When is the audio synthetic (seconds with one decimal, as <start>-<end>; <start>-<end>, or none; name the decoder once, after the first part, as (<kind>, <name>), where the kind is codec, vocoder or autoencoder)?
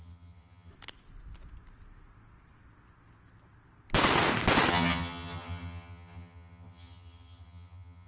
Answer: 0.0-0.7 (vocoder, HiFi-GAN); 4.7-8.1